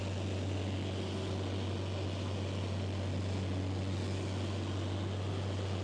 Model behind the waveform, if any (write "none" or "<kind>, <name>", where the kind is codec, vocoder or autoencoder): none